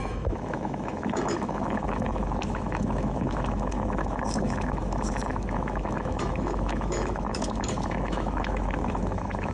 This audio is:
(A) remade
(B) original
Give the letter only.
A